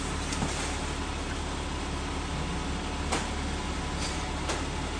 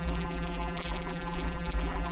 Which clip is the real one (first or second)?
first